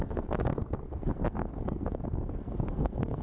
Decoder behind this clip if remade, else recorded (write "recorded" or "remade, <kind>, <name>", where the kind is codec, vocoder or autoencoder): remade, codec, SNAC